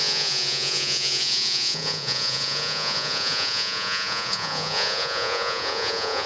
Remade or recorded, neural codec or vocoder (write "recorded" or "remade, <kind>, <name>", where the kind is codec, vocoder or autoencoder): remade, vocoder, Vocos